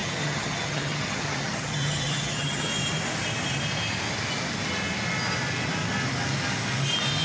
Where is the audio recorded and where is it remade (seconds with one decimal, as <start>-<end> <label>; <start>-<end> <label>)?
0.0-2.7 remade; 2.7-7.2 recorded